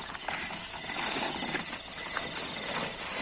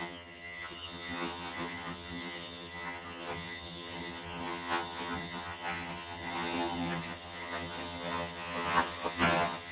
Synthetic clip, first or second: second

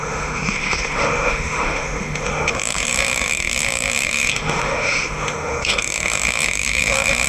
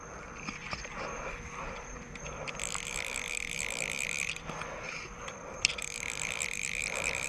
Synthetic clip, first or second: first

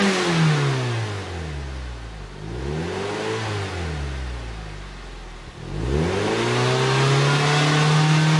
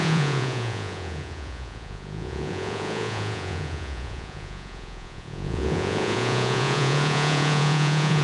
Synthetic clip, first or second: second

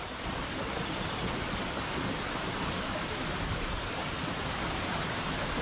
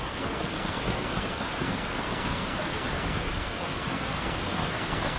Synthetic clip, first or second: second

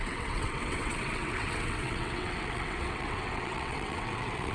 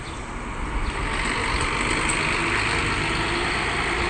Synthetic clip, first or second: first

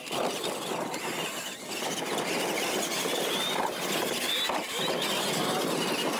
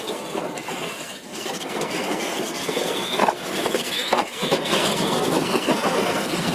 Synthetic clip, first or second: second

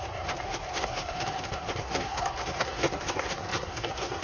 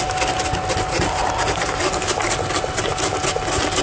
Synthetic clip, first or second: first